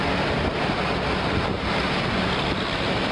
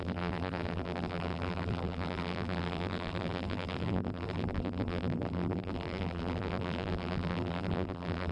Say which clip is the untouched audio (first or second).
first